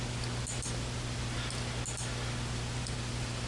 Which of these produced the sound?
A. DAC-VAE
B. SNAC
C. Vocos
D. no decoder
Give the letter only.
D